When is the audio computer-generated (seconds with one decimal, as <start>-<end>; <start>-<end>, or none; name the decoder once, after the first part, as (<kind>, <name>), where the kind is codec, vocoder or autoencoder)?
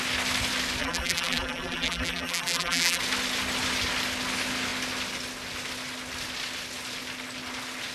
0.8-3.0 (vocoder, BigVGAN v2)